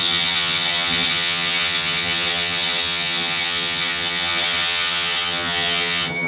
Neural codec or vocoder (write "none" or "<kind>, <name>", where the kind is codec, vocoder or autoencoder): vocoder, HiFi-GAN